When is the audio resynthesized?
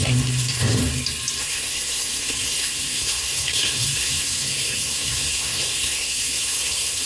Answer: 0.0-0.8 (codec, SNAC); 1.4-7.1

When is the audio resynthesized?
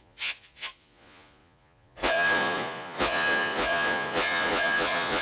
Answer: 0.0-5.2 (vocoder, Vocos)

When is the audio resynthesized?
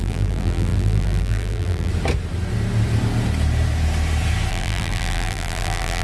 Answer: 0.0-1.9 (vocoder, BigVGAN v2); 4.5-6.0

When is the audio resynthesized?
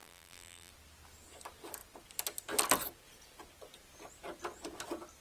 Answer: 0.0-0.7 (vocoder, BigVGAN v2)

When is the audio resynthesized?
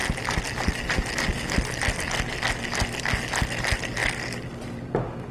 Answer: none